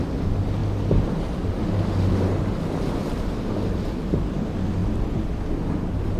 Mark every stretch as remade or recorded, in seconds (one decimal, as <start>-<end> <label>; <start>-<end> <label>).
0.0-3.0 recorded; 3.0-4.0 remade; 4.0-6.2 recorded

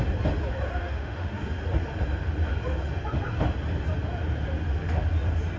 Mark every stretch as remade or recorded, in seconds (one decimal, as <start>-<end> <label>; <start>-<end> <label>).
0.0-0.8 recorded; 0.8-1.4 remade; 1.4-5.6 recorded

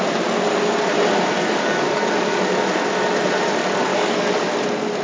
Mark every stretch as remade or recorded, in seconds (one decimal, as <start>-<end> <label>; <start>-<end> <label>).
0.0-1.4 recorded; 1.4-2.6 remade; 2.6-3.9 recorded; 3.9-4.5 remade; 4.5-5.0 recorded

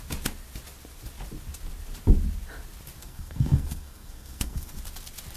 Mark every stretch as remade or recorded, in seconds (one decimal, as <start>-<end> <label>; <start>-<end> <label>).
0.0-3.0 recorded; 3.0-4.8 remade; 4.8-5.4 recorded

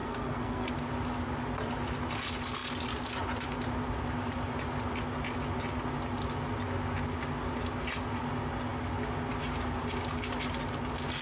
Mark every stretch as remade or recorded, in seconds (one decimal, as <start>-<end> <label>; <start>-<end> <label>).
0.0-0.7 remade; 0.7-11.2 recorded

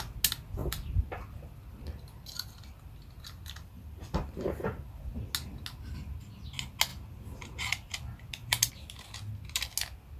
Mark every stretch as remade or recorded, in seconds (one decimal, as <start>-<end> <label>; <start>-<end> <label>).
0.0-0.6 recorded; 0.6-5.0 remade; 5.0-10.2 recorded